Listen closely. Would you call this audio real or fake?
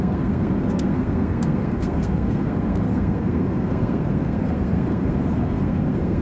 fake